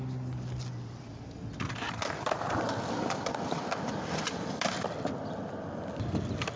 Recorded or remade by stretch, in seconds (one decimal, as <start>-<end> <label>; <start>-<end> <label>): 0.0-0.7 recorded; 0.7-4.7 remade; 4.7-6.6 recorded